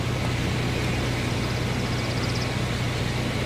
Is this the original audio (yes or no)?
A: yes